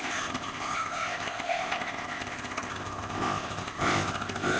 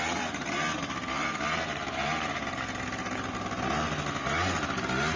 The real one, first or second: second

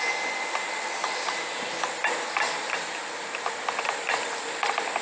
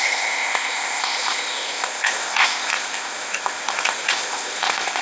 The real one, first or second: first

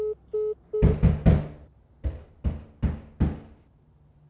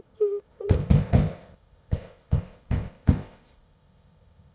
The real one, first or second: first